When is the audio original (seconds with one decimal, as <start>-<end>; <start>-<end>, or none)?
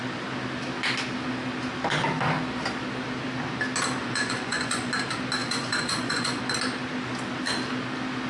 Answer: 0.0-4.0; 4.9-5.4; 6.4-8.3